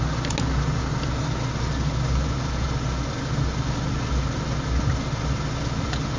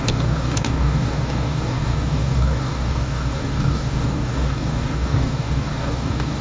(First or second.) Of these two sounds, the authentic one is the first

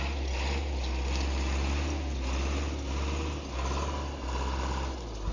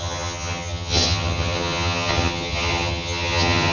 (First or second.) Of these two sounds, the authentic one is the first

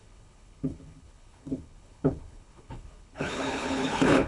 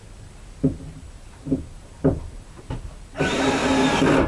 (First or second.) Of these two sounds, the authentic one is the second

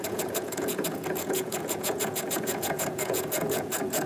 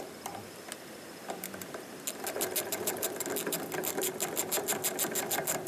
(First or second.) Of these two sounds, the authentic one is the second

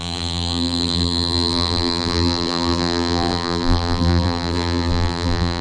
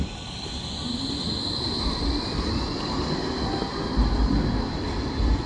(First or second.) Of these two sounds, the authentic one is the second